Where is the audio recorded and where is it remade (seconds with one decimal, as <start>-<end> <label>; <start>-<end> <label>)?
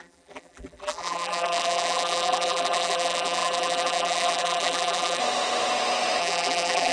0.0-5.2 remade; 5.2-6.2 recorded; 6.2-6.9 remade